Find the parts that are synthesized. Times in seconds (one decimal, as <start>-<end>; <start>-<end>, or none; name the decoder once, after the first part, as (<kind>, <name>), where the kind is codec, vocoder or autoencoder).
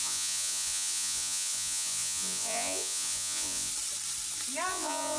0.0-3.7 (vocoder, Vocos); 4.7-5.2